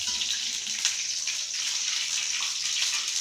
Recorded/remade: recorded